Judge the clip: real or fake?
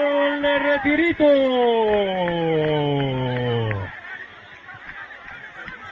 real